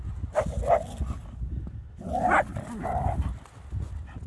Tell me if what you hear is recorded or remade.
recorded